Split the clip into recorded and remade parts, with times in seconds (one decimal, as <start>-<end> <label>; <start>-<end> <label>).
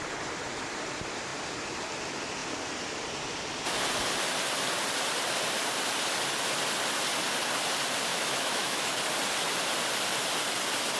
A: 0.0-8.1 recorded; 8.1-9.0 remade; 9.0-11.0 recorded